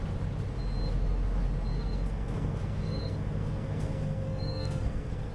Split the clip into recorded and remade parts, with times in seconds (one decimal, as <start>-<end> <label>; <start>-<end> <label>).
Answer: 0.0-1.7 recorded; 1.7-5.3 remade